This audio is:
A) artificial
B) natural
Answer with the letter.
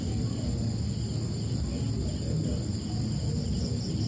B